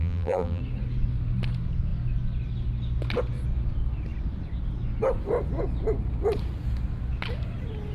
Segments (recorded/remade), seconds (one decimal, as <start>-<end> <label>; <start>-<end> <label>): 0.0-0.6 remade; 0.6-7.9 recorded